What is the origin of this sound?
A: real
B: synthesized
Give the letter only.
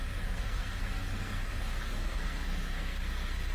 B